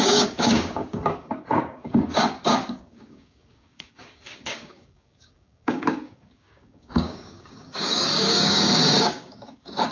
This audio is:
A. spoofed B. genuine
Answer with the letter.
A